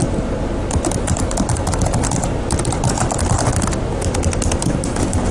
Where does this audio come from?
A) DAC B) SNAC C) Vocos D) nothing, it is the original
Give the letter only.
D